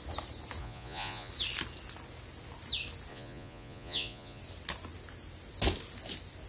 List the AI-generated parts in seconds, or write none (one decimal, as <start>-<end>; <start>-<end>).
0.6-1.3; 3.1-4.4